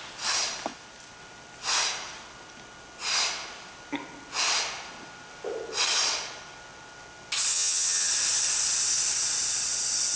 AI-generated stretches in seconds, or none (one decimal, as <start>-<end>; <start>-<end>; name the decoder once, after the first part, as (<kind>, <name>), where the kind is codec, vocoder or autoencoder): 7.5-8.1 (vocoder, HiFi-GAN)